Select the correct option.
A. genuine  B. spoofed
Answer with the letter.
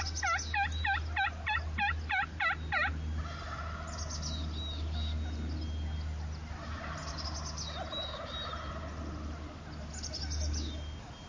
A